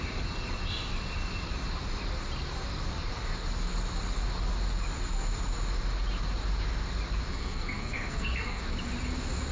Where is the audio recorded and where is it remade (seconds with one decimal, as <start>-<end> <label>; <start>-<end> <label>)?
0.0-7.3 recorded; 7.3-8.6 remade; 8.6-9.5 recorded